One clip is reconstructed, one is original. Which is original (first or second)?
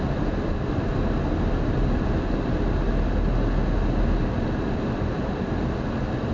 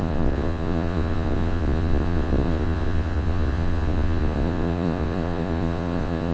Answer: first